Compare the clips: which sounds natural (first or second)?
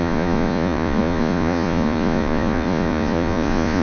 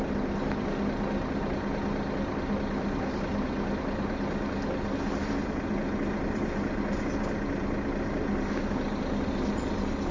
second